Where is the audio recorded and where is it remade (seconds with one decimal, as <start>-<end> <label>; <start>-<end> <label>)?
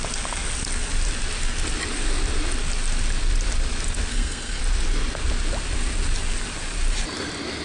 0.0-4.1 recorded; 4.1-4.6 remade; 4.6-7.6 recorded